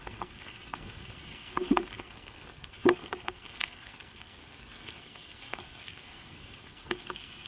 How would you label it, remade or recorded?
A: remade